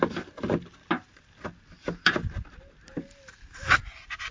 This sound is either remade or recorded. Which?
recorded